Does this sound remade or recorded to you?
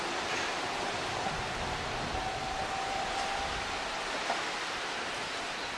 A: recorded